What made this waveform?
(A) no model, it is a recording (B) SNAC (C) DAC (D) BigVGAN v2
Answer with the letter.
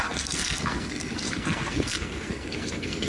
B